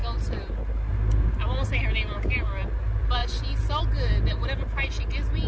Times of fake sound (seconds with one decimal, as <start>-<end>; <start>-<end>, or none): none